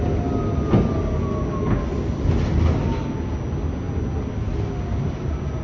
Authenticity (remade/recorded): recorded